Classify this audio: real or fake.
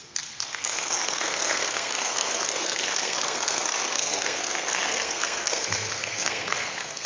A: fake